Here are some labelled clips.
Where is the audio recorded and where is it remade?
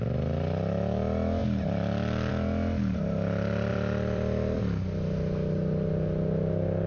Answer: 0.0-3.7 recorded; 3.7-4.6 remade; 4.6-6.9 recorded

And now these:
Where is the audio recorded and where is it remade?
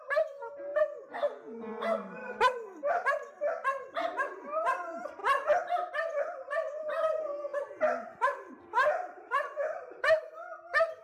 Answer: 0.0-0.7 remade; 0.7-1.7 recorded; 1.7-5.2 remade; 5.2-5.9 recorded; 5.9-11.0 remade